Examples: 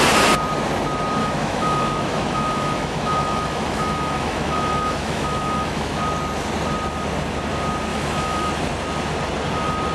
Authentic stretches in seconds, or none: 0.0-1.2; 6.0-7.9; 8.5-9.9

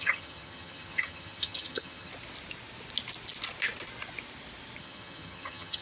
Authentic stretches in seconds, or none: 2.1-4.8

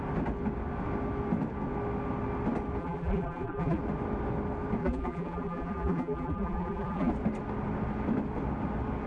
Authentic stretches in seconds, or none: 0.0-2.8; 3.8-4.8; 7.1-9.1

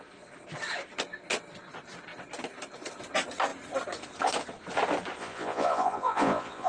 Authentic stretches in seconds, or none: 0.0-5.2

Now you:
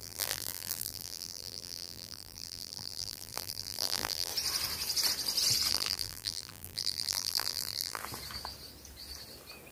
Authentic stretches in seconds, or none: 4.3-5.7; 8.0-9.7

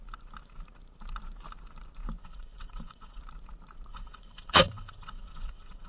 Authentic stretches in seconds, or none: 0.0-2.2; 3.2-3.9